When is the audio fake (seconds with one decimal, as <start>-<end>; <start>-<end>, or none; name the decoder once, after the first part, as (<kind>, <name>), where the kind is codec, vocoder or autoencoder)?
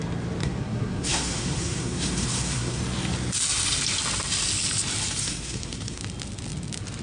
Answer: 0.4-2.8 (codec, SNAC); 5.2-6.0